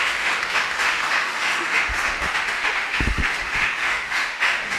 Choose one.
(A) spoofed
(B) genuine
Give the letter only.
A